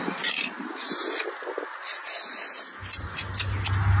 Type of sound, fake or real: real